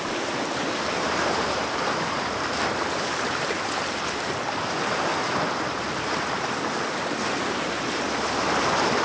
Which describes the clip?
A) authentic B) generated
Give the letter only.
B